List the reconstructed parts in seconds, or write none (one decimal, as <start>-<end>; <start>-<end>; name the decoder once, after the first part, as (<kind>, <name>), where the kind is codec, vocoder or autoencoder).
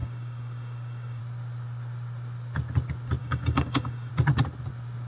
0.0-1.2 (codec, DAC); 3.2-4.1